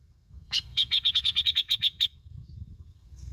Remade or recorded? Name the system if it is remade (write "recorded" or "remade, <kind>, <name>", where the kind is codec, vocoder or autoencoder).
remade, codec, SNAC